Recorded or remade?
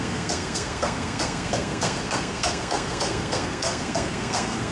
remade